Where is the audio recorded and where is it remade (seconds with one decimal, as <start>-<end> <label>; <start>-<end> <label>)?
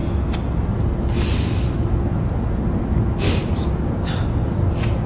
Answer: 0.0-5.1 recorded